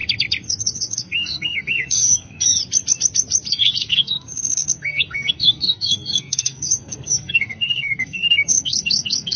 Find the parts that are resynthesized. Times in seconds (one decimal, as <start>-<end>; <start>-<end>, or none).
0.5-2.6; 3.5-9.4